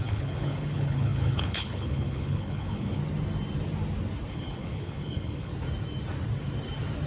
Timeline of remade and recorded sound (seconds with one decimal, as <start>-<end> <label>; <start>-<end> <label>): 0.0-3.0 remade; 3.0-4.3 recorded; 4.3-5.5 remade; 5.5-7.1 recorded